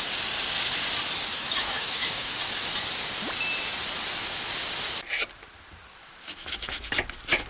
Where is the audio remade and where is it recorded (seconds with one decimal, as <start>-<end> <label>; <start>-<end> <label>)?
0.0-1.3 recorded; 1.3-2.3 remade; 2.3-6.0 recorded; 6.0-6.8 remade; 6.8-7.5 recorded